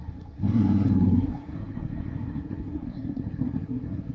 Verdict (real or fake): fake